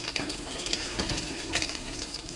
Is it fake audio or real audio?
fake